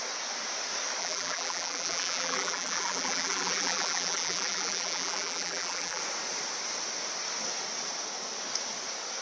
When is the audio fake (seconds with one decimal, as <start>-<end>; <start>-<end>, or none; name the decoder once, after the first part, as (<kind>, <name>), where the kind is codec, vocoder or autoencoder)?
1.0-6.0 (vocoder, BigVGAN v2)